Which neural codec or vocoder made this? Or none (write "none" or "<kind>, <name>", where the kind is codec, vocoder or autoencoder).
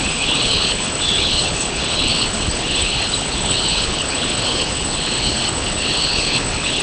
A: codec, HILCodec